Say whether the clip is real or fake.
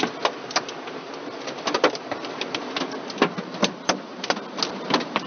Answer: real